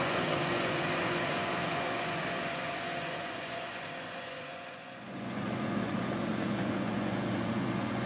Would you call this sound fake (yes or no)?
yes